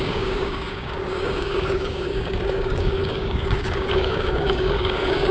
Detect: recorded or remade remade